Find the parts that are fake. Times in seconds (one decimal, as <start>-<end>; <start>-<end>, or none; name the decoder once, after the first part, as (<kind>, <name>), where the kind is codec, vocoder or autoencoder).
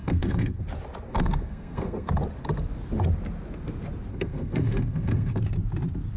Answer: 0.0-0.6 (codec, SNAC); 1.1-2.1; 4.1-5.4